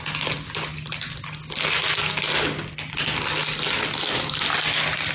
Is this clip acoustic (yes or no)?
yes